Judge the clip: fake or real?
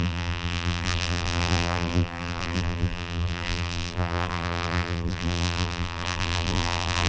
fake